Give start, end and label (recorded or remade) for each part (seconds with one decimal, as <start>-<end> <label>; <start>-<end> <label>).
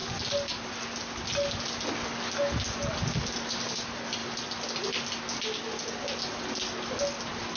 0.0-7.6 recorded